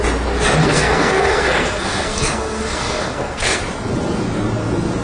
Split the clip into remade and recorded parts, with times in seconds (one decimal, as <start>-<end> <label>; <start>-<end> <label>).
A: 0.0-0.6 recorded; 0.6-3.6 remade; 3.6-5.0 recorded